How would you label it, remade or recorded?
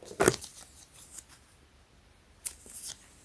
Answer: recorded